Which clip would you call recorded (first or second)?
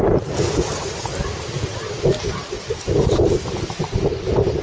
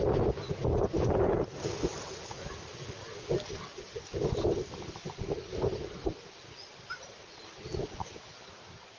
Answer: second